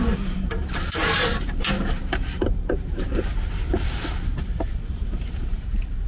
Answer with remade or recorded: remade